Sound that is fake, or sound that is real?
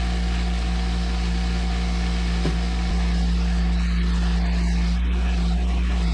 real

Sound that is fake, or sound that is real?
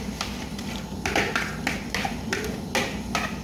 real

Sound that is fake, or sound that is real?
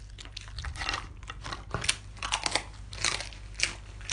real